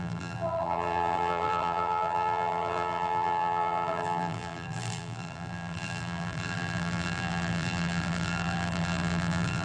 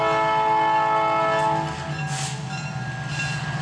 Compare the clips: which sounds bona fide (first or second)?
second